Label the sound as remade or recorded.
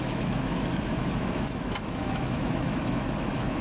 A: remade